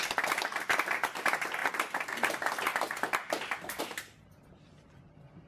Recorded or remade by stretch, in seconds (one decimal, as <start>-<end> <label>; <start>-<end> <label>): 0.0-1.6 remade; 1.6-2.3 recorded; 2.3-2.7 remade; 2.7-3.8 recorded; 3.8-5.5 remade

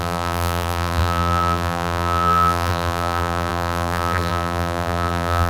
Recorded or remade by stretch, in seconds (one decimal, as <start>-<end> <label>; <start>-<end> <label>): 0.0-5.5 remade

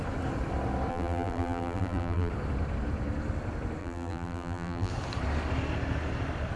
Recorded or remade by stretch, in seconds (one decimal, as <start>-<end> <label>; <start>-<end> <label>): 0.0-0.9 recorded; 0.9-2.3 remade; 2.3-3.8 recorded; 3.8-4.9 remade; 4.9-6.6 recorded

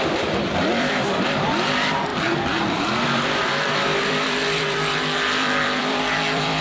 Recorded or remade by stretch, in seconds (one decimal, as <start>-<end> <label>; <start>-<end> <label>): 0.0-6.6 remade

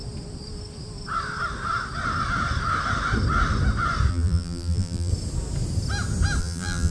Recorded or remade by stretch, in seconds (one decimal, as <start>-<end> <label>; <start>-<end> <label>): 0.0-4.1 recorded; 4.1-5.1 remade; 5.1-6.4 recorded; 6.4-6.9 remade